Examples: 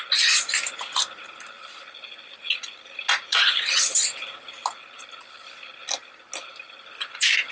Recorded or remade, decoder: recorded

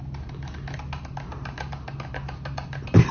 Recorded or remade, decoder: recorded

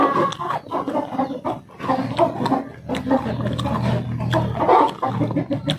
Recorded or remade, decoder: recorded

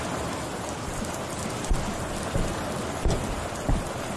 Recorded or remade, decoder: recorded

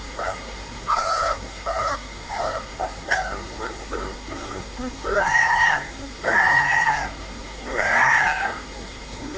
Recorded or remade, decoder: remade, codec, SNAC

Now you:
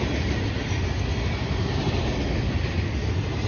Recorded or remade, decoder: recorded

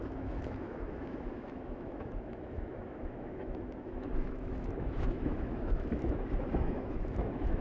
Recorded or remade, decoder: remade, autoencoder, DAC-VAE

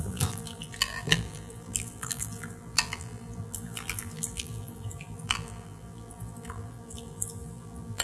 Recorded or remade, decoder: remade, vocoder, BigVGAN v2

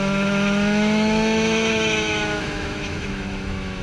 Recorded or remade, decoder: remade, autoencoder, DAC-VAE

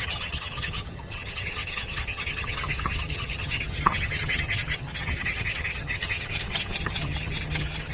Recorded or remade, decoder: remade, vocoder, HiFi-GAN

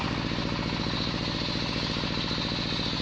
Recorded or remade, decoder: recorded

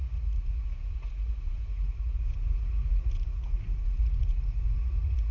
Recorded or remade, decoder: remade, vocoder, Vocos